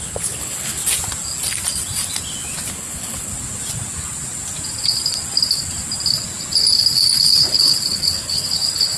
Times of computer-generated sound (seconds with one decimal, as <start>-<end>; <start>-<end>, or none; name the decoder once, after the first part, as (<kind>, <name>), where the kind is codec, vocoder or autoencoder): 0.0-0.8 (codec, HILCodec); 2.7-3.3; 7.2-9.0